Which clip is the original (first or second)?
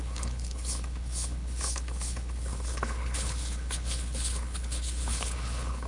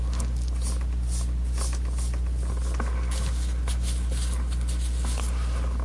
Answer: second